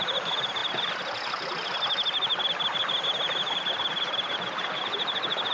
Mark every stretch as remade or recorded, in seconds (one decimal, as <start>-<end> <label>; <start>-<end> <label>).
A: 0.0-5.5 recorded